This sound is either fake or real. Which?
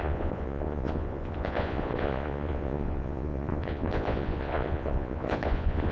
fake